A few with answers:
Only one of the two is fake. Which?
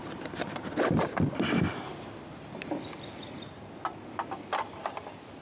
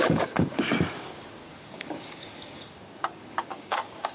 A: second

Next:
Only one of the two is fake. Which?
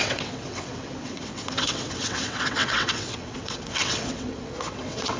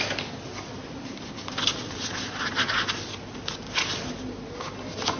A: first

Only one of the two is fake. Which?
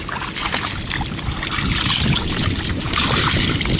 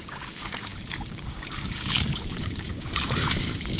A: second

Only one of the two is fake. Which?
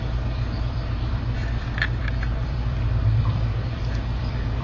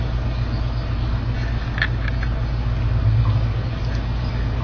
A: first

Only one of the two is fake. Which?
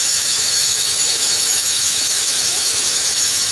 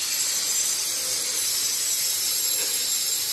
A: first